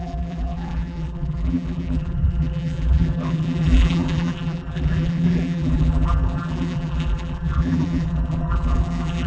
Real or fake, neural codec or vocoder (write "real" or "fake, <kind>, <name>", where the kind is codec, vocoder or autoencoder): fake, vocoder, BigVGAN v2